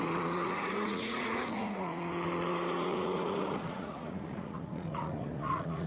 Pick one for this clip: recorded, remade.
remade